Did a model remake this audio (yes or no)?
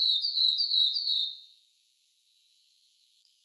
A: yes